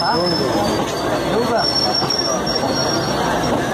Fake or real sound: real